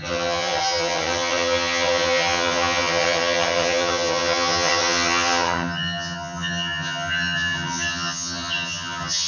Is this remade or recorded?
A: remade